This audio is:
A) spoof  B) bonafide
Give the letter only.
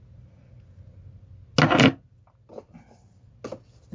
B